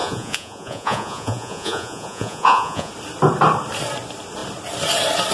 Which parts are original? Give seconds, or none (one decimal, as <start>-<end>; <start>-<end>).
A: 2.9-5.3